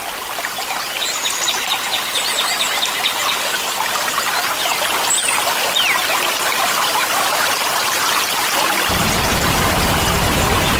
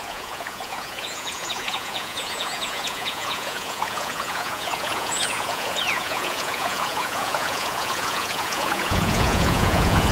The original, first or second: first